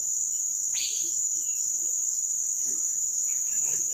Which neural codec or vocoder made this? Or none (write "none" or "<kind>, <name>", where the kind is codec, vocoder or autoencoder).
codec, DAC